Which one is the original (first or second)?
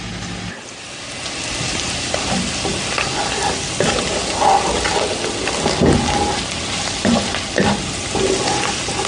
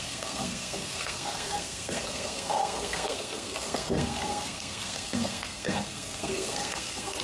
first